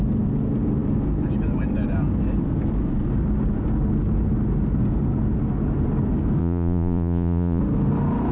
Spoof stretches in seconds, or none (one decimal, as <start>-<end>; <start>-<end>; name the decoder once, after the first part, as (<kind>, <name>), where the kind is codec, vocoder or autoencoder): 6.4-7.6 (vocoder, Vocos)